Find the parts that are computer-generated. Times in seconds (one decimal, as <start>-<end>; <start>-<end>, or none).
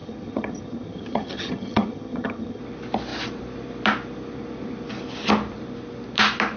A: 0.0-2.6